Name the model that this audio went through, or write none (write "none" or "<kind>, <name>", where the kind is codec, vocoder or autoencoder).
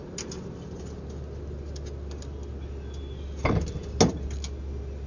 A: none